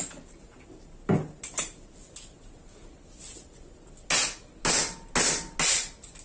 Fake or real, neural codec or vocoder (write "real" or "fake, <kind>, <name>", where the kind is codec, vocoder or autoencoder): real